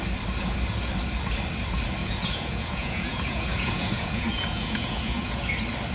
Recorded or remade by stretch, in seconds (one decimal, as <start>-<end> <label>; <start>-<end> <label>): 0.0-2.0 recorded; 2.0-5.5 remade; 5.5-5.9 recorded